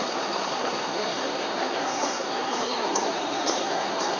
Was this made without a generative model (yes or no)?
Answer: no